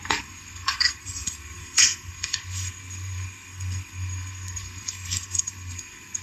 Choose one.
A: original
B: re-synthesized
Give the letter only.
B